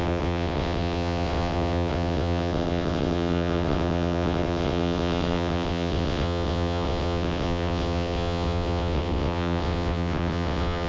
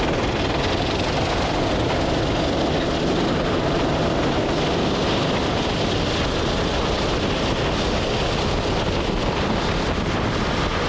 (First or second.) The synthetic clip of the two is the first